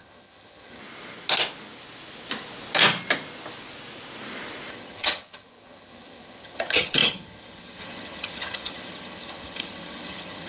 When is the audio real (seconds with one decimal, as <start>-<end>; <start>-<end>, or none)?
0.8-4.7